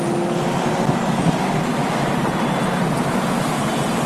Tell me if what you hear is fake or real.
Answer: real